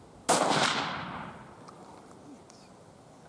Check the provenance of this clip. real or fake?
real